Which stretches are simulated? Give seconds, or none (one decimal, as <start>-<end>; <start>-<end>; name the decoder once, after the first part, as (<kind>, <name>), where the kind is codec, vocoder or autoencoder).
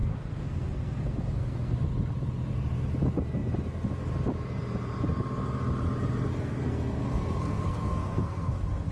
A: 0.0-1.7 (codec, SNAC); 6.3-8.9